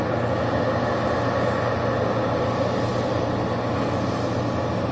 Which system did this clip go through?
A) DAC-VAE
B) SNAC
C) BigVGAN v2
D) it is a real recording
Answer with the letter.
D